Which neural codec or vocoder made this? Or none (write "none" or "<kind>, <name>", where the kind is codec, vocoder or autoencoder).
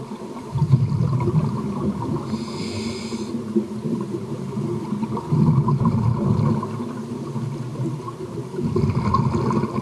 none